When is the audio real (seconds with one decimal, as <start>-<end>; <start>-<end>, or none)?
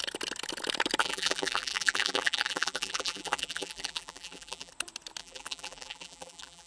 0.0-1.0; 4.7-5.2